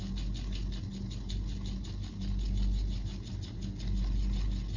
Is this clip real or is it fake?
real